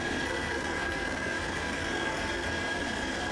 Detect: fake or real fake